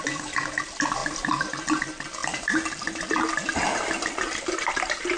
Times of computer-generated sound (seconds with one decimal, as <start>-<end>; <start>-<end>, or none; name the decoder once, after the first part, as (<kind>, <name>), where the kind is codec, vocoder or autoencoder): none